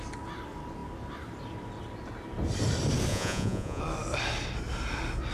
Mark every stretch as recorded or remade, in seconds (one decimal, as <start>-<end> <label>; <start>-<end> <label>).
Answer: 0.0-3.1 recorded; 3.1-3.8 remade; 3.8-5.3 recorded